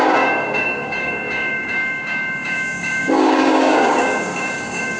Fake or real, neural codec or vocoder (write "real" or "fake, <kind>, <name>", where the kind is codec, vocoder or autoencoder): fake, codec, DAC